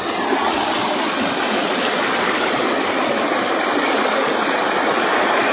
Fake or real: fake